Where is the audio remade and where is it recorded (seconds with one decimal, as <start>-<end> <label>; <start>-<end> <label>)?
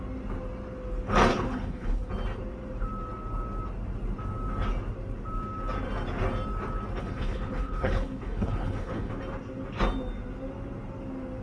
0.0-1.3 recorded; 1.3-2.1 remade; 2.1-7.0 recorded; 7.0-9.1 remade; 9.1-11.4 recorded